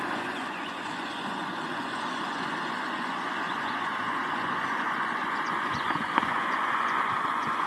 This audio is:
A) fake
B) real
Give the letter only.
A